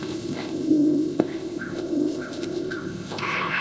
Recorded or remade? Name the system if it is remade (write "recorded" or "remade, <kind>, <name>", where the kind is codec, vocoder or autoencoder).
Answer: remade, codec, ZipCodec